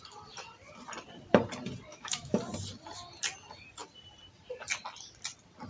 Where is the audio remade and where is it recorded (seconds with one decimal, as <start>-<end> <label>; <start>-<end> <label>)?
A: 0.0-1.9 recorded; 1.9-2.4 remade; 2.4-5.7 recorded